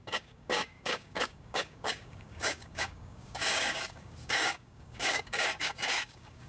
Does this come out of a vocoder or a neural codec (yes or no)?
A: yes